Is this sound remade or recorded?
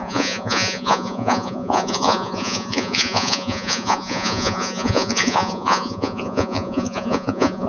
remade